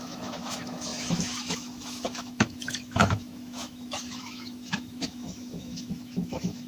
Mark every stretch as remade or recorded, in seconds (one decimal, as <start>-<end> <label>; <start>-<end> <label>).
0.0-6.7 remade